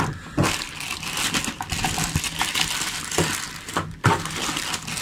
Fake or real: real